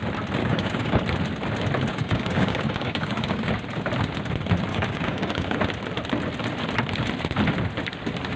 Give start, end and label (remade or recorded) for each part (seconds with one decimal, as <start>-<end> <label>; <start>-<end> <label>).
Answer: 0.0-0.4 recorded; 0.4-1.0 remade; 1.0-1.9 recorded; 1.9-3.5 remade; 3.5-4.7 recorded; 4.7-5.6 remade; 5.6-8.4 recorded